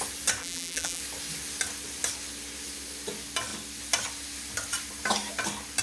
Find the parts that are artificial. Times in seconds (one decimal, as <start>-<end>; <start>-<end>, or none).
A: 0.4-1.0